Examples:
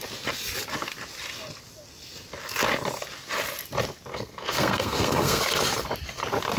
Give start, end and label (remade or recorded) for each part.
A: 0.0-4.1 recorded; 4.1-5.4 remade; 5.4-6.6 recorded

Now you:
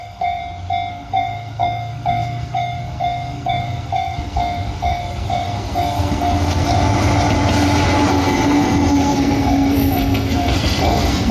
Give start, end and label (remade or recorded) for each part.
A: 0.0-0.4 remade; 0.4-0.9 recorded; 0.9-6.7 remade; 6.7-8.1 recorded; 8.1-11.3 remade

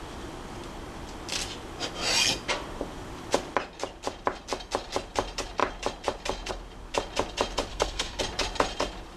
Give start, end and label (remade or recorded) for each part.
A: 0.0-7.7 recorded; 7.7-8.2 remade; 8.2-9.2 recorded

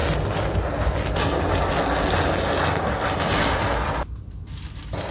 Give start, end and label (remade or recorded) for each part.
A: 0.0-5.1 recorded

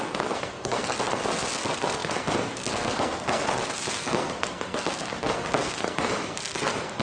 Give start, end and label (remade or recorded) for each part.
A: 0.0-7.0 remade